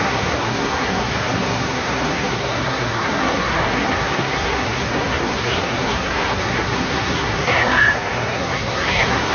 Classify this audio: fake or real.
fake